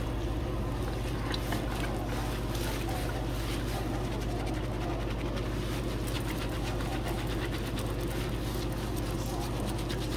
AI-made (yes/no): no